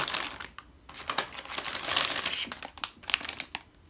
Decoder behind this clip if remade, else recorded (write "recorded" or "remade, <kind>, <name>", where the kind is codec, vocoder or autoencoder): recorded